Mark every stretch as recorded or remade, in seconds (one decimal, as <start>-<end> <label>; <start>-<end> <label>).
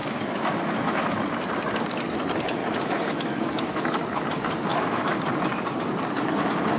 0.0-1.2 remade; 1.2-2.6 recorded; 2.6-3.8 remade; 3.8-4.7 recorded; 4.7-5.2 remade; 5.2-6.8 recorded